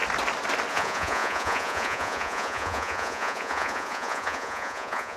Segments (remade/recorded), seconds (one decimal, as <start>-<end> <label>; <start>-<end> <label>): 0.0-0.7 recorded; 0.7-5.2 remade